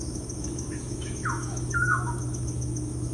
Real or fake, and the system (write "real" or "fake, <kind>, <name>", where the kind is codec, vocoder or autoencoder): fake, autoencoder, DAC-VAE